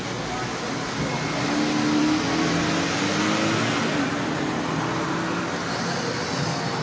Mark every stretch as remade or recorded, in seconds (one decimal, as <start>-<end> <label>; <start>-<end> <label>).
0.0-6.8 recorded